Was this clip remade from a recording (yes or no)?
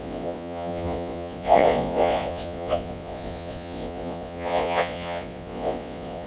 yes